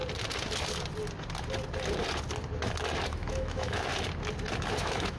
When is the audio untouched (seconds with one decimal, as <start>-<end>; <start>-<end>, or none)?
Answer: 0.0-3.1; 3.9-4.8